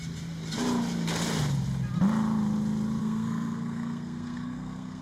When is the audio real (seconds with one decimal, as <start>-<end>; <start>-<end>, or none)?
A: 0.0-3.0